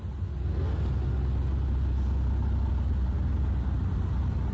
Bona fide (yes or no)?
yes